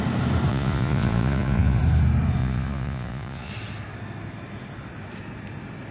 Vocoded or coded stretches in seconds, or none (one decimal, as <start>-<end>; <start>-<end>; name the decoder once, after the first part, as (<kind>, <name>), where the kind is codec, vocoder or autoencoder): 0.5-1.8 (vocoder, Vocos); 2.4-3.5